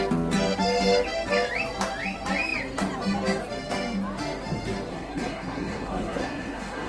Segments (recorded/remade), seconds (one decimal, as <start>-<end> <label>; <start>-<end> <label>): 0.0-4.9 recorded; 4.9-6.9 remade